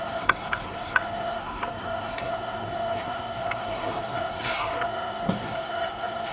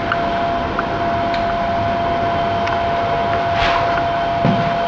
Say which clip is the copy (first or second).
first